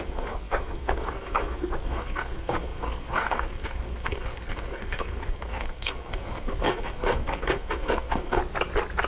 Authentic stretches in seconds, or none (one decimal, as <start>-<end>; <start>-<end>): 8.4-9.1